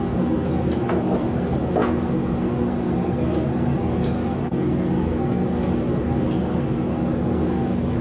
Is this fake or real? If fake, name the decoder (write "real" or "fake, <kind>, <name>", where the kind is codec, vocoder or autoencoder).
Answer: fake, codec, SNAC